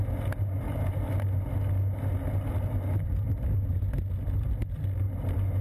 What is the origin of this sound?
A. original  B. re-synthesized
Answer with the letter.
A